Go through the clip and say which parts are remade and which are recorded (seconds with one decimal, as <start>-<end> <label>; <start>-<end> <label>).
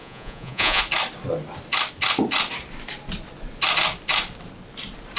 0.0-0.8 remade; 0.8-5.2 recorded